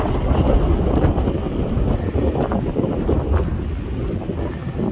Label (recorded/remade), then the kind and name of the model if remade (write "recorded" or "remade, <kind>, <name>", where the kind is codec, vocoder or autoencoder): recorded